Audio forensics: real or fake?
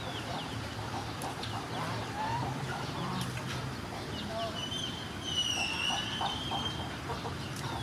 fake